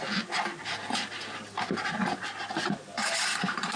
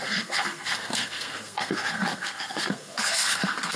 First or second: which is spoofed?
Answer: second